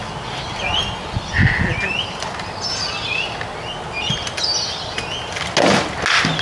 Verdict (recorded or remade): recorded